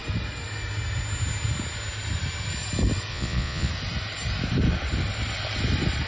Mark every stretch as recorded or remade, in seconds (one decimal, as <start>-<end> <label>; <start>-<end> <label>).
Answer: 0.0-3.1 recorded; 3.1-3.7 remade; 3.7-6.1 recorded